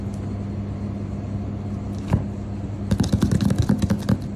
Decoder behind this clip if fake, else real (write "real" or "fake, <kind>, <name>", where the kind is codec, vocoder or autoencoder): real